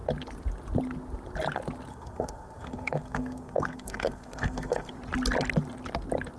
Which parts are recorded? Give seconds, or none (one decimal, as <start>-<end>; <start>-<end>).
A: 0.0-1.9; 4.9-6.4